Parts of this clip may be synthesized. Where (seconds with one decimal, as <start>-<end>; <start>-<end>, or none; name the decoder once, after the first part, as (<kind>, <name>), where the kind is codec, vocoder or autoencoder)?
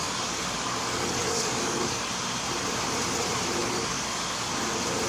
0.0-2.1 (codec, DAC); 3.6-4.5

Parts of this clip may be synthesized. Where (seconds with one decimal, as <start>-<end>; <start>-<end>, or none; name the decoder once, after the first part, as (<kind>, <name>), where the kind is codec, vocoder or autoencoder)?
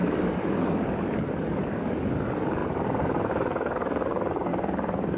0.0-4.5 (codec, DAC)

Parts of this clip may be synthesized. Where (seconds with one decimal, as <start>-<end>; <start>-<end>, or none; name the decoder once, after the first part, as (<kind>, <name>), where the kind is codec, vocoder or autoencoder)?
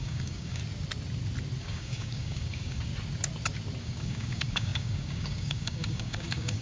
0.0-0.6 (codec, DAC); 1.6-2.9; 3.8-6.6